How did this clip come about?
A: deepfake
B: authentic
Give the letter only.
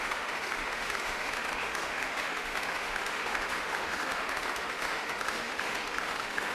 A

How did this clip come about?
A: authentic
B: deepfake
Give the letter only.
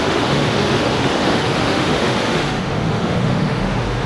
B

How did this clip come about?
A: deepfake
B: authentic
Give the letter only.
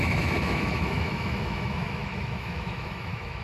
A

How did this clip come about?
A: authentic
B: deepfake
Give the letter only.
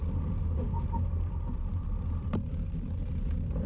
A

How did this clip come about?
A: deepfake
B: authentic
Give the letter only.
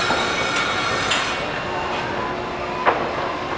B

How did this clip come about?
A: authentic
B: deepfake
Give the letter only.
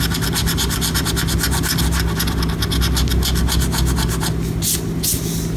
A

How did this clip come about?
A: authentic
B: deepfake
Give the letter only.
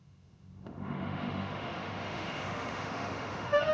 B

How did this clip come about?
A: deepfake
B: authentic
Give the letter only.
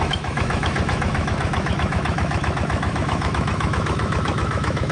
A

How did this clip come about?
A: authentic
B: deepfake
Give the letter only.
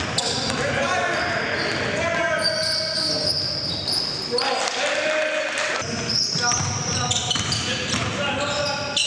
A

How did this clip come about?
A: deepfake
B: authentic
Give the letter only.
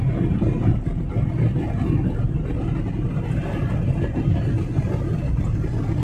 B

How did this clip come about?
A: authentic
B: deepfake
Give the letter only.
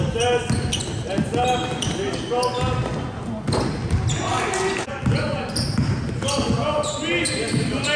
A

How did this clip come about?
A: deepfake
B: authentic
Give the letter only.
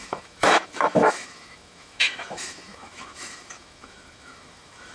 A